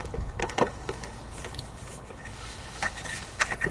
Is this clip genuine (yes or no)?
no